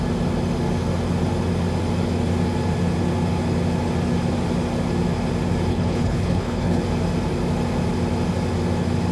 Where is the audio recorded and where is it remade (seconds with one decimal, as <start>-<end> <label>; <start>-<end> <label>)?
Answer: 0.0-5.7 recorded; 5.7-6.8 remade; 6.8-9.1 recorded

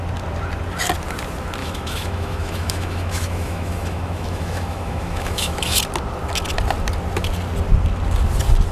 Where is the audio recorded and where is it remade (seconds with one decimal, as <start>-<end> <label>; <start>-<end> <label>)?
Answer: 0.0-1.6 recorded; 1.6-5.8 remade; 5.8-8.7 recorded

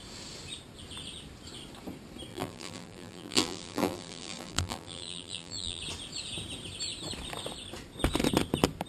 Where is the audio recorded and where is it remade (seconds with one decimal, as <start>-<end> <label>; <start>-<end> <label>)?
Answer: 0.0-2.3 recorded; 2.3-5.8 remade; 5.8-8.9 recorded

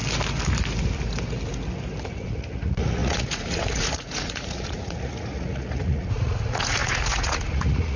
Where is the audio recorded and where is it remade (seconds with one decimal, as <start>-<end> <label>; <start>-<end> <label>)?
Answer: 0.0-2.0 recorded; 2.0-8.0 remade

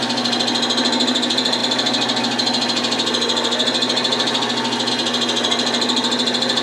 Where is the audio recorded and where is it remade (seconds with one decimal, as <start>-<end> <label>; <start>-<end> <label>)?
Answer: 0.0-6.6 recorded

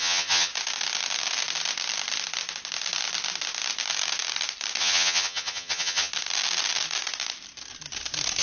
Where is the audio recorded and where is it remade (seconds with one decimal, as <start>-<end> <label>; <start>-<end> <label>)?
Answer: 0.0-0.5 remade; 0.5-4.8 recorded; 4.8-6.1 remade; 6.1-8.4 recorded

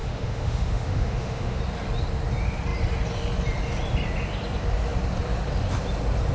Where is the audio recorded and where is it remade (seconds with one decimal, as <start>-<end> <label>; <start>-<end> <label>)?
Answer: 0.0-1.6 remade; 1.6-6.3 recorded

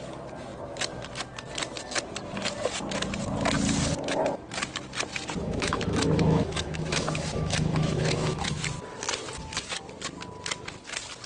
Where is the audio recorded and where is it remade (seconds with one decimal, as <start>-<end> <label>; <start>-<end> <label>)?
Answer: 0.0-5.4 recorded; 5.4-8.6 remade; 8.6-11.3 recorded